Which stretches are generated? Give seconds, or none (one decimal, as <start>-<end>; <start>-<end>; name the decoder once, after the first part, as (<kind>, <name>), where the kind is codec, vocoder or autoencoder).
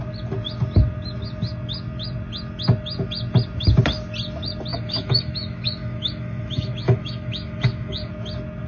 4.7-8.1 (autoencoder, DAC-VAE)